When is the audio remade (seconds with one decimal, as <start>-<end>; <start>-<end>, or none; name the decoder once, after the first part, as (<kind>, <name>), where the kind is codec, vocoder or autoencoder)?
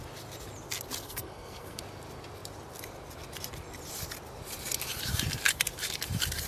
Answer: 1.0-1.8 (codec, SNAC)